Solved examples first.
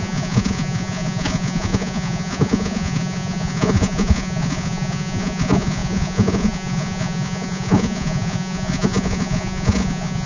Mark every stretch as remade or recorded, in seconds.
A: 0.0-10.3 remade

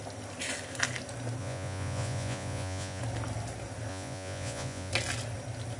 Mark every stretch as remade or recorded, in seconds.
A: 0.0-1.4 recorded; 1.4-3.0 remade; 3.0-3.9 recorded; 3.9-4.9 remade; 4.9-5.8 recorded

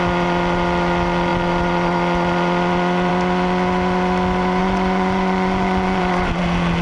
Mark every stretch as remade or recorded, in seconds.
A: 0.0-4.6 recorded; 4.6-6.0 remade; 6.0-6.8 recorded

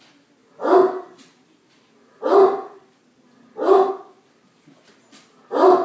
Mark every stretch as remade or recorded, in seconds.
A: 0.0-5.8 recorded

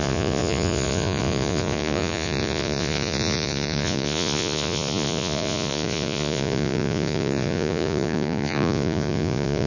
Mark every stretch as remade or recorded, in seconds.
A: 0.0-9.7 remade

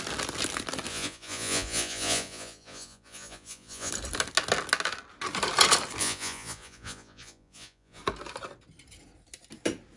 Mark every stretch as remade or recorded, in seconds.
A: 0.0-0.9 recorded; 0.9-3.9 remade; 3.9-6.0 recorded; 6.0-8.0 remade; 8.0-10.0 recorded